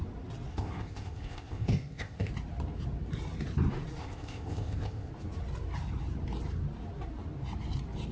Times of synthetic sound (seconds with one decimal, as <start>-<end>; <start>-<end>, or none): 0.5-2.3; 4.0-5.1